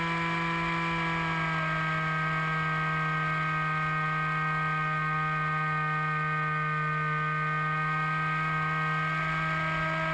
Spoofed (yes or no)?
no